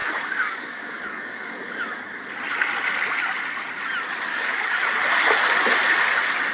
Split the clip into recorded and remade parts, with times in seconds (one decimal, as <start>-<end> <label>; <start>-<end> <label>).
0.0-2.0 remade; 2.0-4.3 recorded; 4.3-5.0 remade; 5.0-6.5 recorded